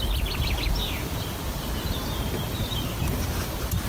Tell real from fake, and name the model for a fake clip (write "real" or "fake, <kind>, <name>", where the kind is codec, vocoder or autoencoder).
real